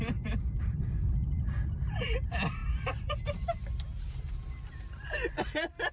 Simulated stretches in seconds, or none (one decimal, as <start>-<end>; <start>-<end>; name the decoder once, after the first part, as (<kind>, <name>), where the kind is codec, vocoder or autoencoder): 0.0-2.6 (vocoder, BigVGAN v2)